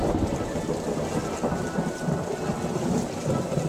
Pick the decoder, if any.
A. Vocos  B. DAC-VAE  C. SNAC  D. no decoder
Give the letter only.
D